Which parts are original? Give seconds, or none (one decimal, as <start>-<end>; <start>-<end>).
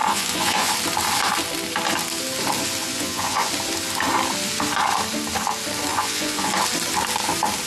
0.7-2.8; 3.5-5.9; 6.5-7.7